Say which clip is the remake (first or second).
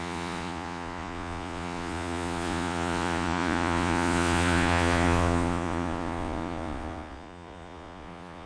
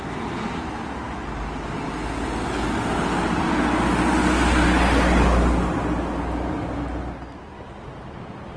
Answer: first